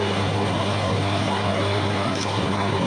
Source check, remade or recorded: remade